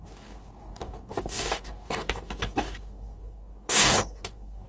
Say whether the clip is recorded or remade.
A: remade